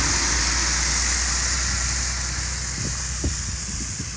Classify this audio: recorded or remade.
recorded